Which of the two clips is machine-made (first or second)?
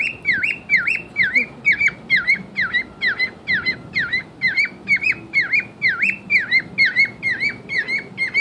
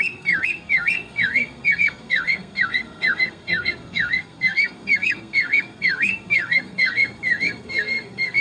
second